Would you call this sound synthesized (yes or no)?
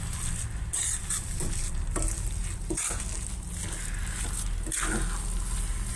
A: no